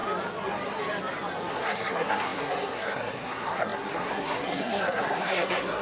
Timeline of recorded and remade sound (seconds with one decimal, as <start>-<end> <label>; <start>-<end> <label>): 0.0-1.5 recorded; 1.5-5.8 remade